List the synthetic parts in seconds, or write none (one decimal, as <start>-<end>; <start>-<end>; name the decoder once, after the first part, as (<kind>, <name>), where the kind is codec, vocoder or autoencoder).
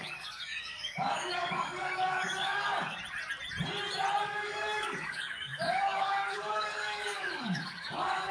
0.0-3.0 (codec, DAC); 4.2-8.3